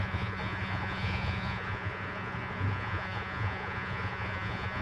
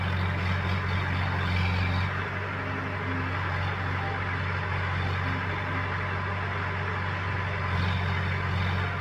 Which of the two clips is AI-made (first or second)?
first